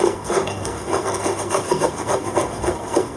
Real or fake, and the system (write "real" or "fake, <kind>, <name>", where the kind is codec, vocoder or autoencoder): fake, codec, SNAC